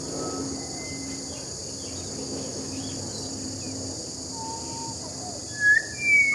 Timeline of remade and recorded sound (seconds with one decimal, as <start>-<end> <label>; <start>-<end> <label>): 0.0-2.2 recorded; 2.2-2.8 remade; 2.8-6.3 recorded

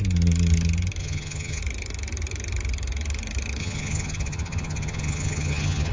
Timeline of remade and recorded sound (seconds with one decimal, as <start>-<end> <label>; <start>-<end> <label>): 0.0-1.0 recorded; 1.0-1.6 remade; 1.6-3.6 recorded; 3.6-5.9 remade

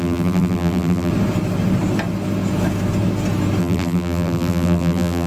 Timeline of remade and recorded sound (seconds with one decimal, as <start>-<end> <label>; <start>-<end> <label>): 0.0-1.1 remade; 1.1-3.6 recorded; 3.6-5.3 remade

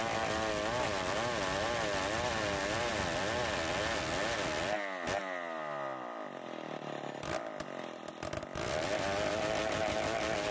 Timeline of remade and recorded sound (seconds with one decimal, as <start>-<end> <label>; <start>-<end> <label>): 0.0-10.5 recorded